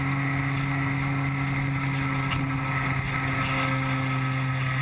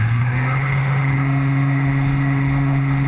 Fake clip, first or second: second